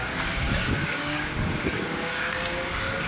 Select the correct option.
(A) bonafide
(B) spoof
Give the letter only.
B